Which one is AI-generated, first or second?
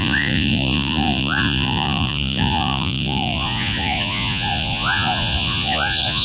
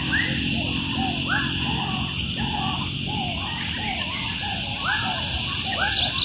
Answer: first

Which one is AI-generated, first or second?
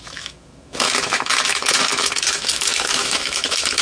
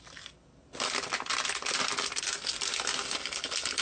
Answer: first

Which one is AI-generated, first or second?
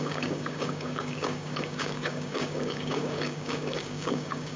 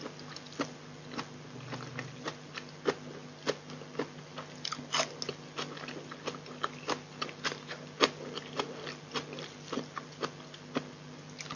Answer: first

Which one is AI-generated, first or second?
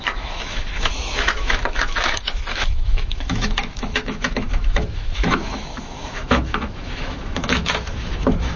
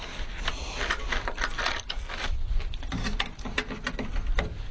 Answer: first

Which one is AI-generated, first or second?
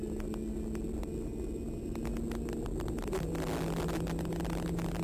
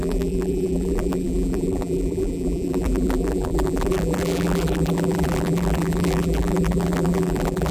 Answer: second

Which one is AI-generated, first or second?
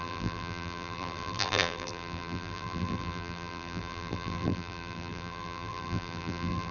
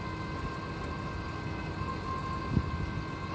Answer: first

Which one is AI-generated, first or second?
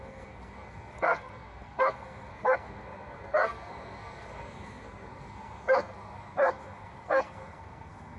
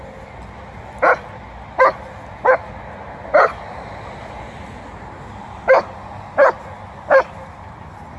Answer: first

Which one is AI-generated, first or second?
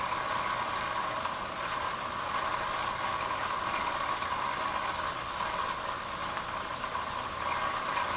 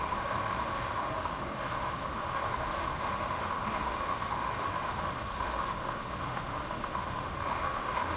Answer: second